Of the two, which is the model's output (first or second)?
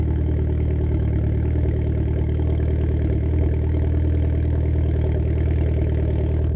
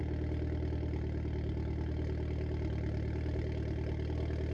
first